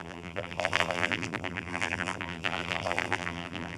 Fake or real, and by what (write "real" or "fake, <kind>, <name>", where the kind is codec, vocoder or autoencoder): fake, vocoder, BigVGAN v2